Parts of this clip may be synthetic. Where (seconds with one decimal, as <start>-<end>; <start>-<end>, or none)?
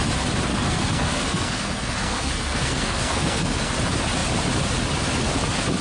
0.5-3.7